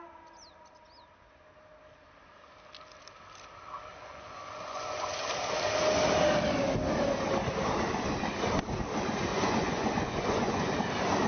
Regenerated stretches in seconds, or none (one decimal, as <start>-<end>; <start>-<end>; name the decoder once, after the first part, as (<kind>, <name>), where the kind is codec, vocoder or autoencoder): 3.9-5.3 (vocoder, Vocos); 9.3-10.7